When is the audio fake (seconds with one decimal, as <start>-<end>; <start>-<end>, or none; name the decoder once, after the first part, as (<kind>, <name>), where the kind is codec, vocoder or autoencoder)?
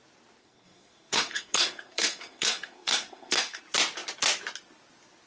0.4-3.6 (codec, SNAC)